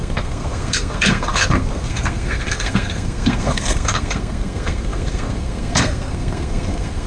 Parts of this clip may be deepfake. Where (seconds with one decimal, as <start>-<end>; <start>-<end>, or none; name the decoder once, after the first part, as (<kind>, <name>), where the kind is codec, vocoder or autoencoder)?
0.0-7.1 (codec, SNAC)

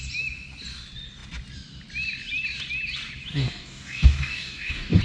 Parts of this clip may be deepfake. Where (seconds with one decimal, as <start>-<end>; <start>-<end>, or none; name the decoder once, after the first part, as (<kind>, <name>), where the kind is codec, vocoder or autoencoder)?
3.3-5.0 (codec, DAC)

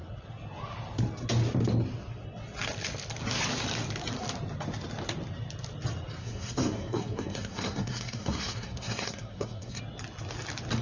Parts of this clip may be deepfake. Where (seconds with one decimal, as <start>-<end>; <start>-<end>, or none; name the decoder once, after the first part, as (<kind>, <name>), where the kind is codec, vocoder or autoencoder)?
6.2-9.8 (codec, SNAC)

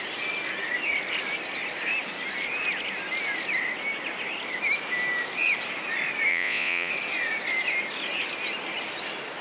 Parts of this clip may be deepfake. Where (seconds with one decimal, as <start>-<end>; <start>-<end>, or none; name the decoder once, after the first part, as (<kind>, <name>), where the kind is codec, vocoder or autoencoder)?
6.3-6.9 (vocoder, Vocos)

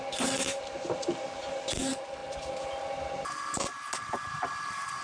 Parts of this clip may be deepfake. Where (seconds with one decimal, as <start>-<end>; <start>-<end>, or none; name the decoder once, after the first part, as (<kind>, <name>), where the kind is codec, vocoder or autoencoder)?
none